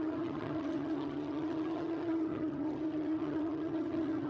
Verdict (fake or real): fake